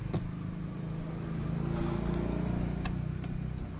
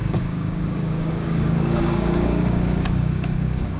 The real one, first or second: first